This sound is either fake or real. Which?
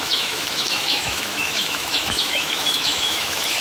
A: fake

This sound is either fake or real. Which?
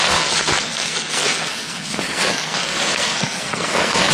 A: fake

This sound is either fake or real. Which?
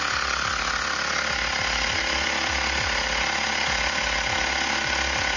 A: real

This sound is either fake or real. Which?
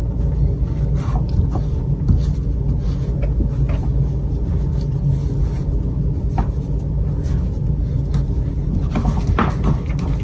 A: real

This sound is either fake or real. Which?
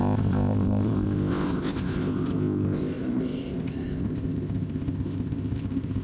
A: fake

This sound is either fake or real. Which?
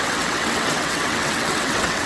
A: fake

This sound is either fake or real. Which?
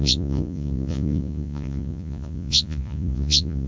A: fake